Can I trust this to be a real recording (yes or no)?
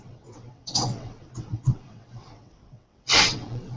no